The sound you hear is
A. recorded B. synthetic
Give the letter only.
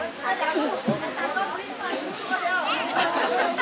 A